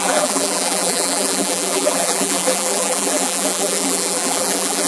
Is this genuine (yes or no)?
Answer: no